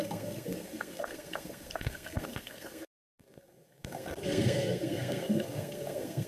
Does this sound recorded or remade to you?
remade